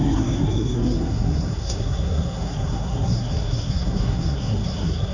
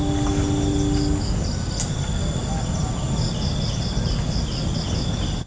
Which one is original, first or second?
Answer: second